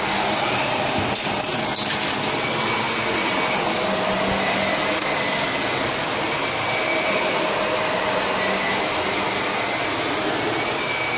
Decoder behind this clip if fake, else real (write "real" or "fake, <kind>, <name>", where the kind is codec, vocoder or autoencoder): real